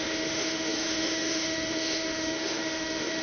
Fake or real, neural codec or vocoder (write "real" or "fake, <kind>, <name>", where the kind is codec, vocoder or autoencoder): fake, autoencoder, DAC-VAE